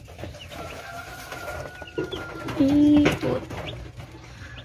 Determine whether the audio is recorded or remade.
recorded